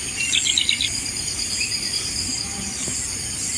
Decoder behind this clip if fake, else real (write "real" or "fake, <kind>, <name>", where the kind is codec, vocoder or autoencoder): real